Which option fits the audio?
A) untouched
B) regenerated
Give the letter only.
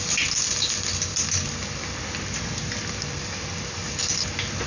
A